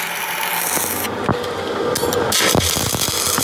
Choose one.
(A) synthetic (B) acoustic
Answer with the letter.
B